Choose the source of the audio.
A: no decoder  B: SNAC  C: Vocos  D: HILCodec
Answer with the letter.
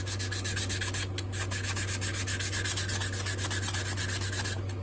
A